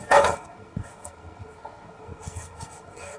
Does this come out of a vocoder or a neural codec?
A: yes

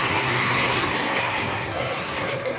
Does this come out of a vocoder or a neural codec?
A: yes